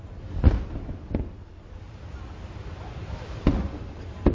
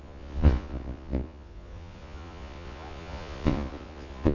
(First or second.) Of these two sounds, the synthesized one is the second